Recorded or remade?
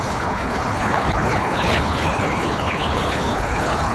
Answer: remade